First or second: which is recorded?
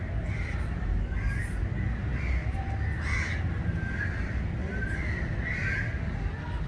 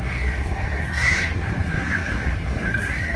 first